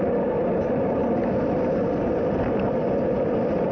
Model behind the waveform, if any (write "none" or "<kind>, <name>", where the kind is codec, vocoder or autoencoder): none